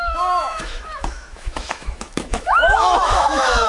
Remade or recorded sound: remade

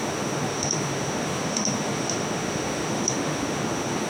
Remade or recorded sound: remade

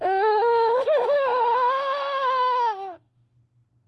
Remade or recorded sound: remade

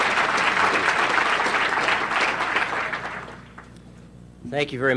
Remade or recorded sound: recorded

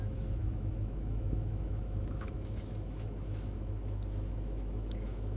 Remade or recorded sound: remade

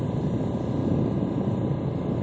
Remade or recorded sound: recorded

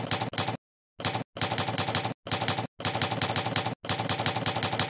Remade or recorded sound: recorded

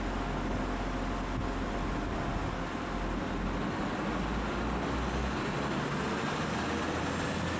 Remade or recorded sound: recorded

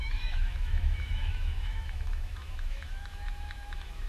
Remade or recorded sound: remade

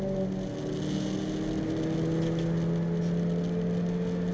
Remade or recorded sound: recorded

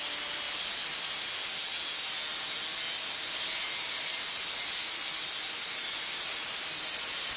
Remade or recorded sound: recorded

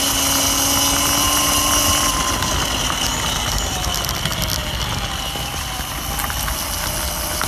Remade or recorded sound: recorded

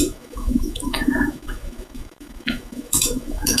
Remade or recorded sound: remade